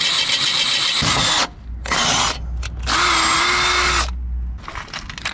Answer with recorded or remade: recorded